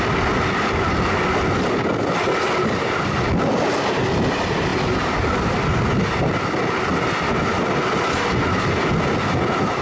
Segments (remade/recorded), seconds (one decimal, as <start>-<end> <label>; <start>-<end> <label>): 0.0-9.8 recorded